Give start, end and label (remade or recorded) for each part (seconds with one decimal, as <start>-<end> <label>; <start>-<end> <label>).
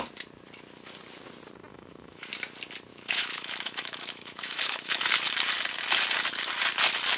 0.0-1.7 recorded; 1.7-2.3 remade; 2.3-2.9 recorded; 2.9-5.0 remade; 5.0-7.2 recorded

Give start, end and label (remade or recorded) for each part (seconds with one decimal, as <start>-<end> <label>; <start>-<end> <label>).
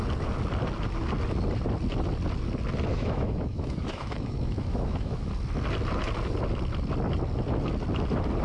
0.0-2.9 recorded; 2.9-5.3 remade; 5.3-8.4 recorded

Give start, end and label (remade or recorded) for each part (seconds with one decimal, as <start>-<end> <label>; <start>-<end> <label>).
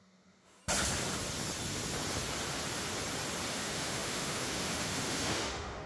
0.0-0.6 remade; 0.6-3.5 recorded; 3.5-5.9 remade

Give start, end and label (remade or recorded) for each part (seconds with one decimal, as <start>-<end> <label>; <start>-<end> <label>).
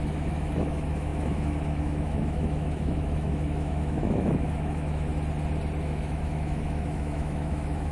0.0-5.1 remade; 5.1-5.8 recorded; 5.8-7.9 remade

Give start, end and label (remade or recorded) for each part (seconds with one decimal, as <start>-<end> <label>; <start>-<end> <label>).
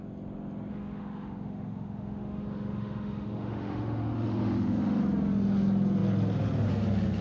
0.0-0.7 recorded; 0.7-5.0 remade; 5.0-7.2 recorded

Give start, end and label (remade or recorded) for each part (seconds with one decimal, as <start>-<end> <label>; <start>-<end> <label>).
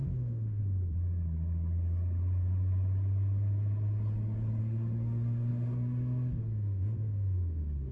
0.0-0.6 remade; 0.6-4.6 recorded; 4.6-7.9 remade